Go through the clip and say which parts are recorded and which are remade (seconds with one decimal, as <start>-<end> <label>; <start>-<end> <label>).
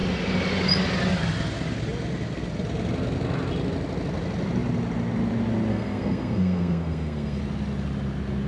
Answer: 0.0-5.7 recorded; 5.7-7.4 remade; 7.4-8.5 recorded